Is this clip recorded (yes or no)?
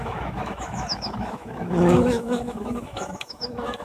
no